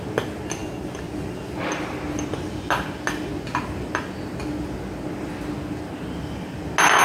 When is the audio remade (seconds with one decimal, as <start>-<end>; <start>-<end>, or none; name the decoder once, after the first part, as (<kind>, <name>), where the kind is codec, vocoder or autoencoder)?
none

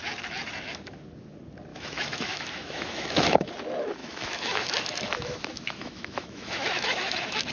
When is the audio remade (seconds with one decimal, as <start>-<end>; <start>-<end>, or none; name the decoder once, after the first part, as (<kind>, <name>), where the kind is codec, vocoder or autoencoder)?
1.7-3.5 (autoencoder, DAC-VAE); 4.0-7.5

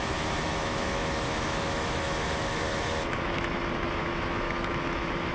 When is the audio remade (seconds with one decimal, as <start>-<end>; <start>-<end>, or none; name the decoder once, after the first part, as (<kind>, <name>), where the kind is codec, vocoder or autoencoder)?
0.0-5.3 (autoencoder, DAC-VAE)

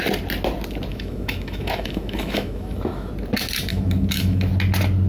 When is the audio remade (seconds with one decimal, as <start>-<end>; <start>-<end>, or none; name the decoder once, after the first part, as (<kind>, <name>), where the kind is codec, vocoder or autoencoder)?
0.9-3.1 (autoencoder, DAC-VAE); 3.7-4.5

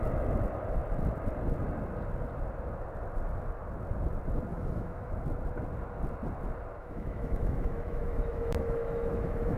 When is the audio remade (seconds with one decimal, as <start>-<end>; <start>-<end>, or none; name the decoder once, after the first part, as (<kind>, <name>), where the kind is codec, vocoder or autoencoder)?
4.5-5.1 (autoencoder, DAC-VAE); 6.8-9.6

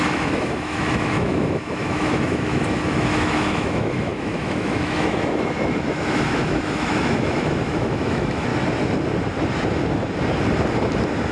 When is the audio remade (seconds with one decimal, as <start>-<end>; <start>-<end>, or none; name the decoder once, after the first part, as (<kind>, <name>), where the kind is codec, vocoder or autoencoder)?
0.0-8.5 (autoencoder, DAC-VAE)

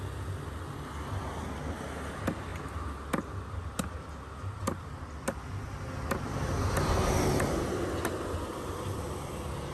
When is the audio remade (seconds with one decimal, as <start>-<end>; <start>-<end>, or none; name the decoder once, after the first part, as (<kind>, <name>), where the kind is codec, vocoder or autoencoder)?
none